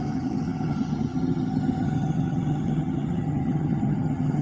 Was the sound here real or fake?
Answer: fake